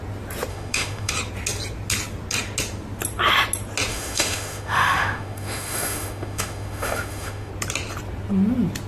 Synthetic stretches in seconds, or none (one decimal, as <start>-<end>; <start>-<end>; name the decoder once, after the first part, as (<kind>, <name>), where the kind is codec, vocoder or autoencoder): 0.5-1.1 (autoencoder, DAC-VAE); 3.9-7.5